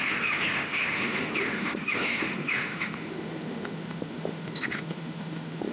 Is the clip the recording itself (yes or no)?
no